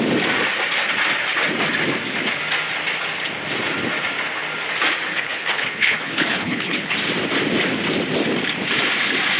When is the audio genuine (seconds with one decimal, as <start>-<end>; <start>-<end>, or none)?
0.0-5.1; 6.9-9.4